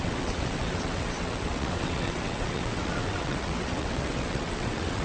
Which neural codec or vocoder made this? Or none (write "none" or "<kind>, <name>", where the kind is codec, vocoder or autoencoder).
vocoder, WaveNeXt